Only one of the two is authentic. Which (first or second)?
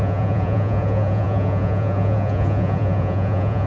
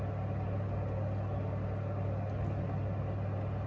second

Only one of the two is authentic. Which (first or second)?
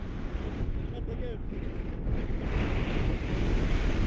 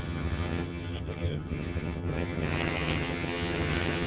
first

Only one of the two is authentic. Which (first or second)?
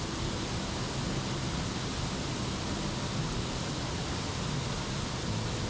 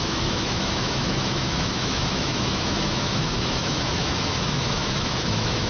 first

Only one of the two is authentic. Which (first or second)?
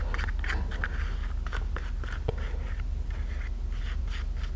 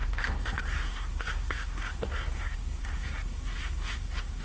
first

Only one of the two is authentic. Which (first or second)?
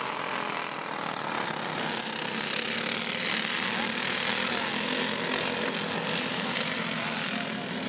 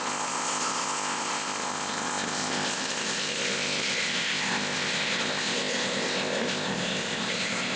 first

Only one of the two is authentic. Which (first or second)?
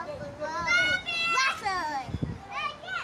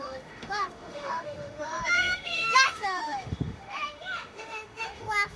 first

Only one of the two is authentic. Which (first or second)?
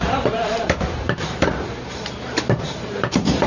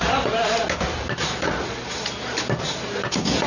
second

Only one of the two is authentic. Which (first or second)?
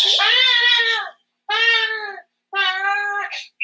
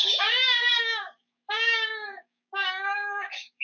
first